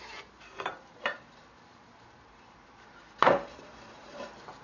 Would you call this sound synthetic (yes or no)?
yes